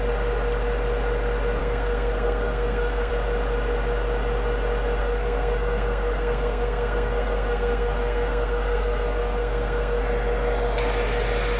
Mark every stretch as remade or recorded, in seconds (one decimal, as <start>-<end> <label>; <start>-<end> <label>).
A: 0.0-1.6 recorded; 1.6-3.1 remade; 3.1-5.0 recorded; 5.0-10.0 remade; 10.0-11.6 recorded